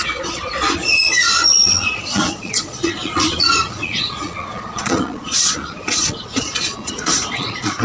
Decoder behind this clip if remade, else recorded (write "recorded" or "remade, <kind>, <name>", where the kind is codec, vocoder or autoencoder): remade, vocoder, Vocos